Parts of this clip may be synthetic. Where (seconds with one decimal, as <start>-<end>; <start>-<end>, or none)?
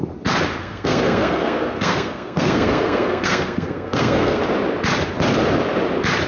0.6-4.4